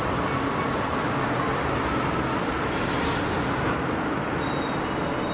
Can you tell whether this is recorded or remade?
recorded